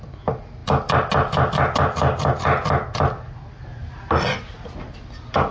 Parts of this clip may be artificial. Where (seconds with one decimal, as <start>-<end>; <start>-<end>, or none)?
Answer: none